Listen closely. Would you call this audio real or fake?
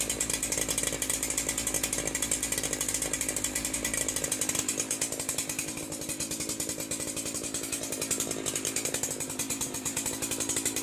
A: real